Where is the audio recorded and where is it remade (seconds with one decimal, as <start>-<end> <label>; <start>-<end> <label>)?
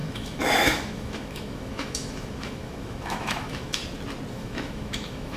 0.0-3.8 remade; 3.8-4.3 recorded; 4.3-5.4 remade